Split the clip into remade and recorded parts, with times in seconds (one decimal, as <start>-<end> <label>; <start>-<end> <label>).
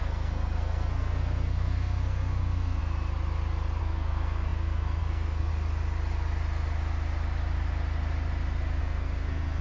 0.0-2.8 remade; 2.8-3.8 recorded; 3.8-5.5 remade; 5.5-8.8 recorded; 8.8-9.6 remade